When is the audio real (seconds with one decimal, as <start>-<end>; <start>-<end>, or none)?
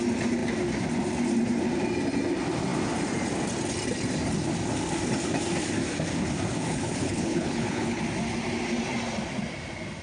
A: 0.0-6.6; 8.0-10.0